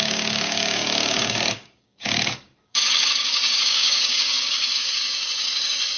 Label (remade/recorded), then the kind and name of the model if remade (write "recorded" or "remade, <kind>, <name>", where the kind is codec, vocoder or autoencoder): remade, codec, DAC